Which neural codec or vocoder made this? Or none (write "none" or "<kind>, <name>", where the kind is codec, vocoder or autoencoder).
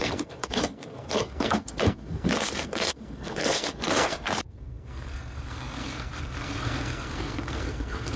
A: codec, SNAC